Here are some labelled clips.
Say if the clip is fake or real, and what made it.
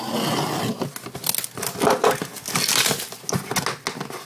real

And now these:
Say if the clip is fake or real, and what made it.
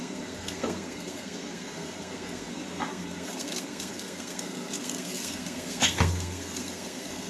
fake, codec, SNAC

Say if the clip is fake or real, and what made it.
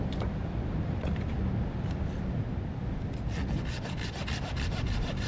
real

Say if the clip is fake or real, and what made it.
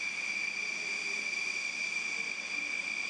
real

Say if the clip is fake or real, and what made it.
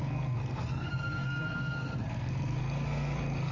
fake, codec, SNAC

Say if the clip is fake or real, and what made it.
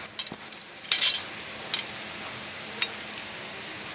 real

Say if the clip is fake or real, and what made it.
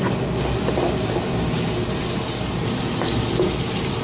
real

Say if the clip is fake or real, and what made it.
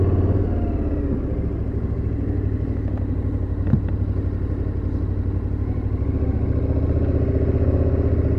real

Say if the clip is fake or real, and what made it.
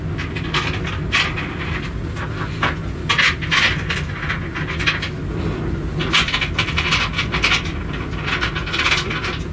real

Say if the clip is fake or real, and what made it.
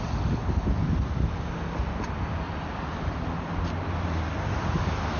real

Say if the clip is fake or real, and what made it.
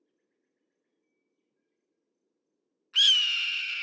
real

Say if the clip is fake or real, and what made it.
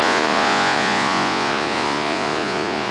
fake, vocoder, Vocos